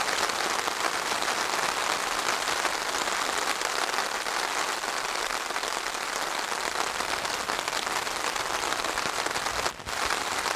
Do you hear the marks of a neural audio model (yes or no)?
no